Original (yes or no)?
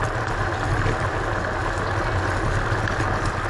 yes